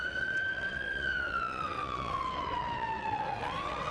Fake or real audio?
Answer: fake